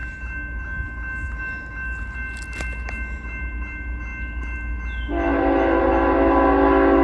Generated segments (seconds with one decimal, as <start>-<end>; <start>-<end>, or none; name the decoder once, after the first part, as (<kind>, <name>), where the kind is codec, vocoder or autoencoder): none